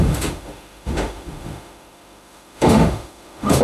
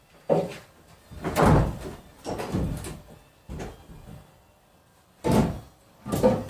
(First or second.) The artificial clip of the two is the first